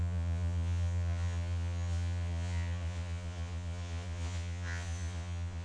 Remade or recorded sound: remade